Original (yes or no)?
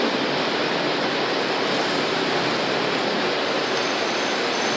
yes